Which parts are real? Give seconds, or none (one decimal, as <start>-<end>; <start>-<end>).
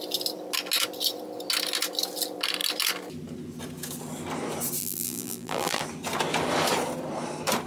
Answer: 0.0-4.8; 5.8-7.7